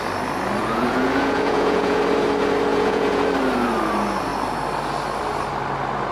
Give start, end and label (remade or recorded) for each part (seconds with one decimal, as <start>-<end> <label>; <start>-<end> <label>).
0.0-0.6 recorded; 0.6-2.0 remade; 2.0-2.7 recorded; 2.7-3.2 remade; 3.2-6.1 recorded